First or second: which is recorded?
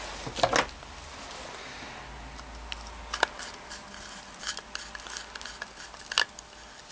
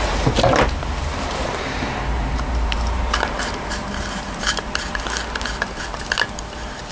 first